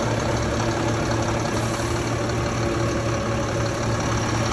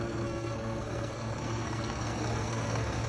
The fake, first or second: second